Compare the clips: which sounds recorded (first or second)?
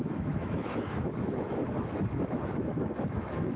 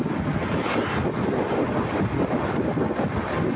second